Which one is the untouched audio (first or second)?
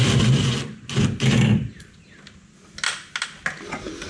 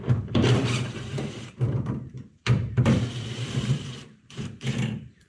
first